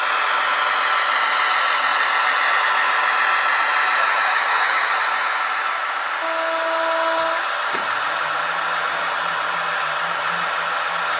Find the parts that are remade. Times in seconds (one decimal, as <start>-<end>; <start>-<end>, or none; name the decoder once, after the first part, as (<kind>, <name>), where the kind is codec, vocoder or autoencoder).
4.0-4.9 (vocoder, HiFi-GAN)